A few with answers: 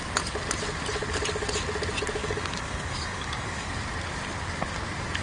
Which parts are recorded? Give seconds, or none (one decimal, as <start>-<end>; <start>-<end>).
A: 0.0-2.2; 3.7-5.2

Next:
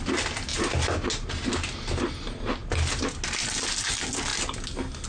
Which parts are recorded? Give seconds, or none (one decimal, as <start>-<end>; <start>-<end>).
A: 0.0-5.1

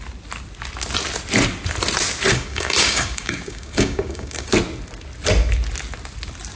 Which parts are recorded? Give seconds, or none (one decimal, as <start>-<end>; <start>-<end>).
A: 0.0-2.3; 4.5-6.6